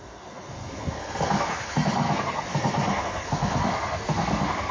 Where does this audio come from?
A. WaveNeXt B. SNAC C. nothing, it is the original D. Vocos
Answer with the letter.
B